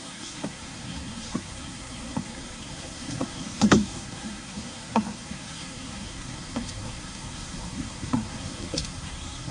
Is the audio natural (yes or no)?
no